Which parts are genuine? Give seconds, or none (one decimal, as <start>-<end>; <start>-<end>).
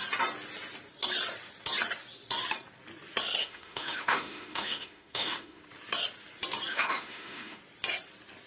0.0-3.4; 5.6-6.7; 7.6-8.5